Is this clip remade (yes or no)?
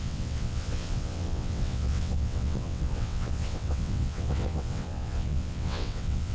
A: yes